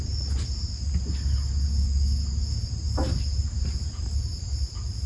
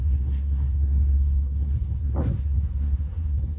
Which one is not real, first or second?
second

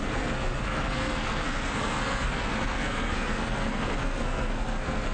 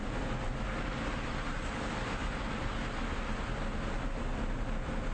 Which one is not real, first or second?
first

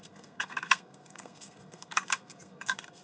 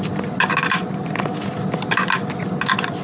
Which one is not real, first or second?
first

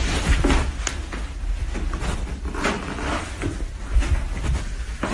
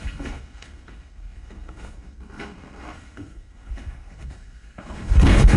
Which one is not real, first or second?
second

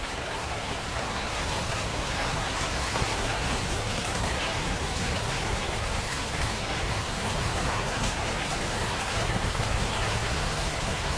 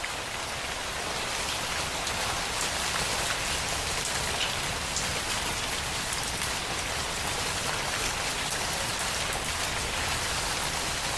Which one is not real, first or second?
first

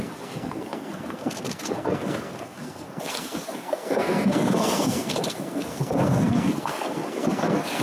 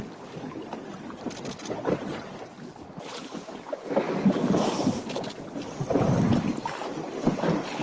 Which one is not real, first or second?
first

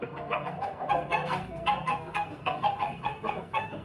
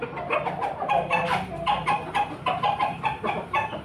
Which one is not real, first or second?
first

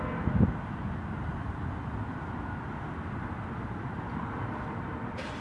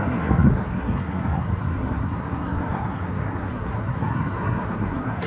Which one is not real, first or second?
second